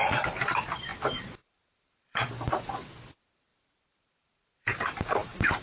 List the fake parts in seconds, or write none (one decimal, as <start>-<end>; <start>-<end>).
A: 0.9-2.3; 3.5-5.6